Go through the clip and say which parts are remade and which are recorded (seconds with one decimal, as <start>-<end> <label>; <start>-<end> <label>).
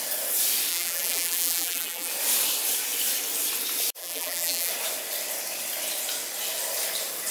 0.0-0.7 recorded; 0.7-2.1 remade; 2.1-4.0 recorded; 4.0-4.7 remade; 4.7-7.3 recorded